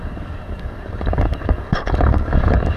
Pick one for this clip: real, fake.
fake